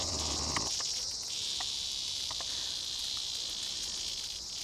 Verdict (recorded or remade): recorded